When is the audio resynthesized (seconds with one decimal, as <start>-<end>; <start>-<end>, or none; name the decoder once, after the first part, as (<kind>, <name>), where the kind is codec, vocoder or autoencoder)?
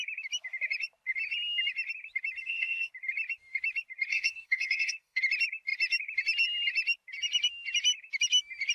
2.4-2.9 (codec, SNAC); 4.1-5.2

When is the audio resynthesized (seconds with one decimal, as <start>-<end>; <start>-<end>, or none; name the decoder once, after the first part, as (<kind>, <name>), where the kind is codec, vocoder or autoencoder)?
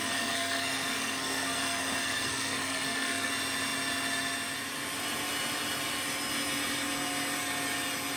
0.0-3.3 (codec, SNAC)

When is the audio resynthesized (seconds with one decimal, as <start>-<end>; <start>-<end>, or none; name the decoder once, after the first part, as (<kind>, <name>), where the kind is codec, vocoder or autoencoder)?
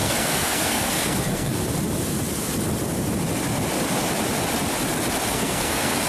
0.0-1.6 (codec, SNAC); 5.3-6.1